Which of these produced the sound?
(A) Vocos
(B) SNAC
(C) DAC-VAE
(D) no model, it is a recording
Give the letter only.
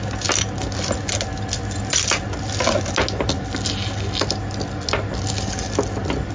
D